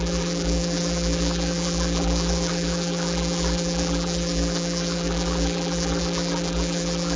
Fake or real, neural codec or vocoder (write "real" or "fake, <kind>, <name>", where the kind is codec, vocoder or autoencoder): fake, vocoder, BigVGAN v2